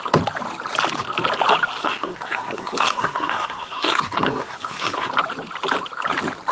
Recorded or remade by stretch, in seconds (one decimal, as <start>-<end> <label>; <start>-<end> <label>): 0.0-1.8 recorded; 1.8-5.1 remade; 5.1-6.5 recorded